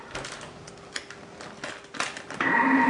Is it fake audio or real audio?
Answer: real